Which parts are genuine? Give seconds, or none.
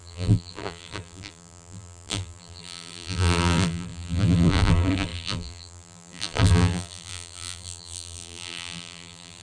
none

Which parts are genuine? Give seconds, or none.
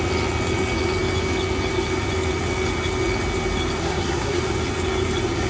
0.0-3.8; 4.4-5.5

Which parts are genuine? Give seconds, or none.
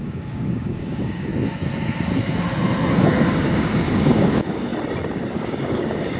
1.3-3.3; 4.7-5.3